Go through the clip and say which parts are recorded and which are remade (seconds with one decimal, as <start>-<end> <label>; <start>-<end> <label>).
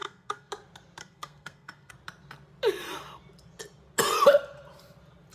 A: 0.0-0.5 remade; 0.5-1.0 recorded; 1.0-1.9 remade; 1.9-5.3 recorded